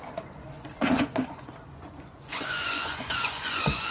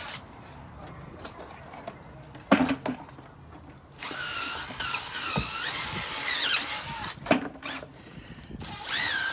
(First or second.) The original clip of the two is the second